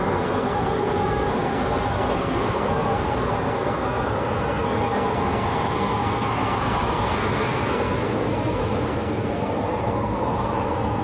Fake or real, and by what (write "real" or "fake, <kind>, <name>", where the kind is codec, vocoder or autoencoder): fake, codec, SNAC